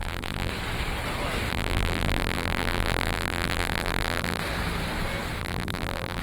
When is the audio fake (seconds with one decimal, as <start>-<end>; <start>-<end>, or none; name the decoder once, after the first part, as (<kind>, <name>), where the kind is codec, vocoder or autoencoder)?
0.0-0.5 (vocoder, BigVGAN v2); 1.5-4.4; 5.4-6.2